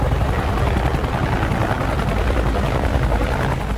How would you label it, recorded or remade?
recorded